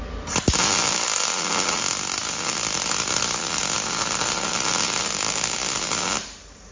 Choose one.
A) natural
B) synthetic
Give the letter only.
A